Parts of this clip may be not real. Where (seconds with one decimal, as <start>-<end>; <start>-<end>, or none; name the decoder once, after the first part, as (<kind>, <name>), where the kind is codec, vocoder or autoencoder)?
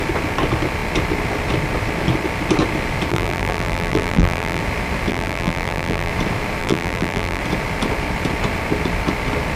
3.1-4.6 (vocoder, BigVGAN v2); 5.1-6.1; 6.6-7.4